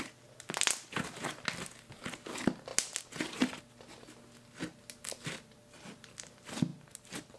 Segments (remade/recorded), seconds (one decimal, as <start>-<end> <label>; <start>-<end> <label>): 0.0-7.4 recorded